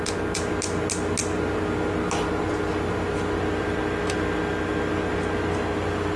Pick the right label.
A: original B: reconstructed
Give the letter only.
A